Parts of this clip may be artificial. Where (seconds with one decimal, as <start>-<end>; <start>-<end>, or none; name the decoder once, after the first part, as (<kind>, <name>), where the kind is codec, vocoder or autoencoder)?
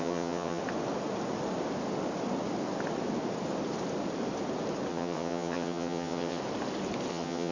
0.0-0.6 (vocoder, HiFi-GAN); 4.9-6.4; 7.1-7.5